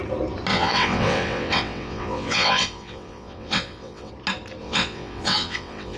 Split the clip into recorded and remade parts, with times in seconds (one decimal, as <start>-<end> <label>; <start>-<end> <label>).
0.0-0.5 recorded; 0.5-4.1 remade; 4.1-4.6 recorded; 4.6-6.0 remade

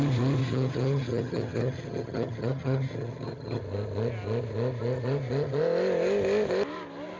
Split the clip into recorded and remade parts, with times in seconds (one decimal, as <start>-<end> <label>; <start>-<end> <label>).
0.0-0.4 recorded; 0.4-3.6 remade; 3.6-7.2 recorded

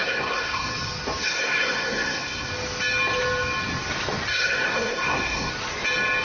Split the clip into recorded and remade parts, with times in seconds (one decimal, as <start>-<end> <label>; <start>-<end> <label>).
0.0-0.7 remade; 0.7-1.2 recorded; 1.2-2.5 remade; 2.5-4.3 recorded; 4.3-5.5 remade; 5.5-6.2 recorded

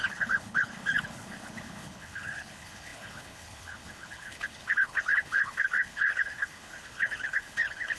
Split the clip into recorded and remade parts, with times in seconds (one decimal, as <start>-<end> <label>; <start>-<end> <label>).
0.0-8.0 remade

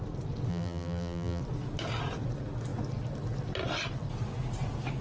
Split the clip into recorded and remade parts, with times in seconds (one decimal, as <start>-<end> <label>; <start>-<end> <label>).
0.0-0.5 recorded; 0.5-1.4 remade; 1.4-5.0 recorded

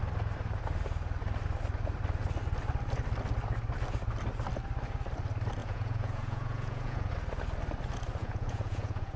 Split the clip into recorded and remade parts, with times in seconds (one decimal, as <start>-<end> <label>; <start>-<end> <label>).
0.0-5.6 recorded; 5.6-7.1 remade; 7.1-8.2 recorded; 8.2-9.2 remade